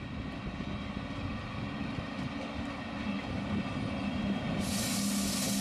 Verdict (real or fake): real